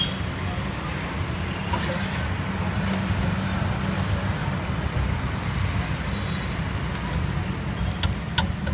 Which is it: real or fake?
real